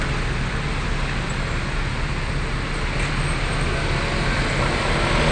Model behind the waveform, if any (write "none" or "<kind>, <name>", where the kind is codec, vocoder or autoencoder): none